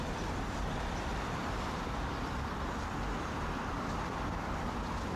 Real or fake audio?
fake